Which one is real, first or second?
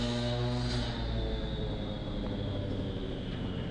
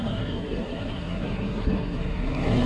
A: first